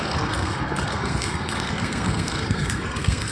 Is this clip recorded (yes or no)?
no